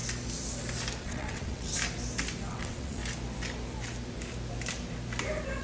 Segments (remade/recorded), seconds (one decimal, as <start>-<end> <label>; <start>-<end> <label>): 0.0-1.0 recorded; 1.0-1.7 remade; 1.7-2.5 recorded; 2.5-3.0 remade; 3.0-5.6 recorded